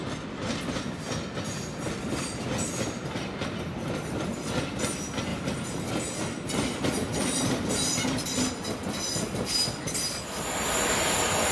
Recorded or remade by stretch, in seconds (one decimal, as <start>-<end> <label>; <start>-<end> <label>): 0.0-5.3 recorded; 5.3-5.9 remade; 5.9-11.5 recorded